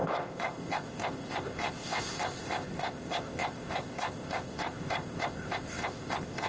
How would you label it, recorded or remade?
remade